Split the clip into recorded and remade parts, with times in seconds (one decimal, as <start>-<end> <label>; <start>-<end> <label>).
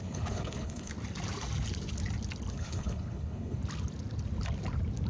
0.0-0.9 remade; 0.9-2.5 recorded; 2.5-3.6 remade; 3.6-5.1 recorded